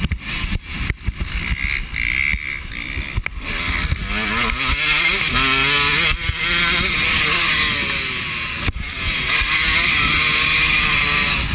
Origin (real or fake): real